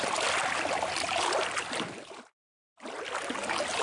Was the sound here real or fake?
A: real